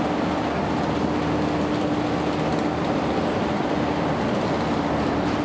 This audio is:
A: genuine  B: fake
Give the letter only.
A